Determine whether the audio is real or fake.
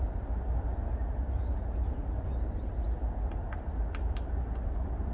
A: real